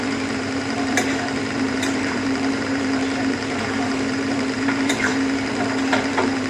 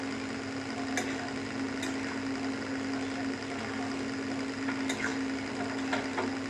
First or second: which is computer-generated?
first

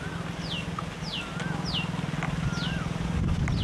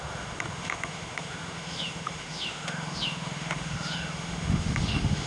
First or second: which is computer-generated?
second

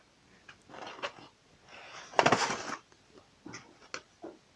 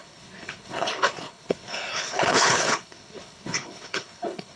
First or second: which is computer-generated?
second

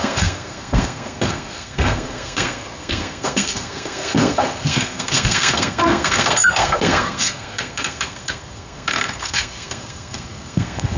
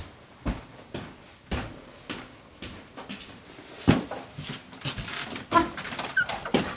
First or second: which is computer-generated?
first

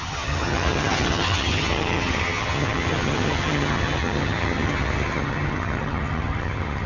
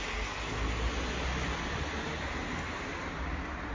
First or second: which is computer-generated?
first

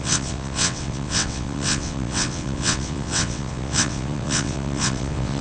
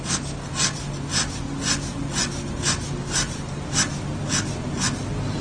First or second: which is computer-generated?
first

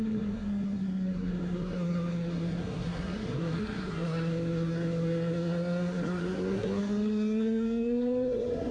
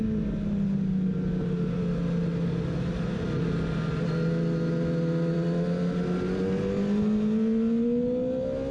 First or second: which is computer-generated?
first